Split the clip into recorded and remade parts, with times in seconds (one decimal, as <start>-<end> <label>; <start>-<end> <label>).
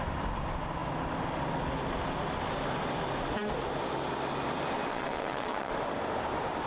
0.0-4.9 recorded; 4.9-5.7 remade; 5.7-6.7 recorded